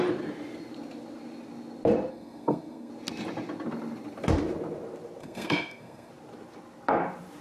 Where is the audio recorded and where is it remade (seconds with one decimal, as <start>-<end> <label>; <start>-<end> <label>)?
0.0-2.1 recorded; 2.1-2.9 remade; 2.9-5.2 recorded; 5.2-6.1 remade; 6.1-7.4 recorded